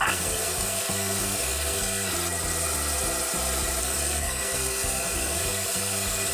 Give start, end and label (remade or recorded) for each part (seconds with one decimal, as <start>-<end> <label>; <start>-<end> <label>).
0.0-2.1 remade; 2.1-3.8 recorded; 3.8-6.3 remade